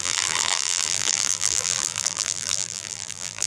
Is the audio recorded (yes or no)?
no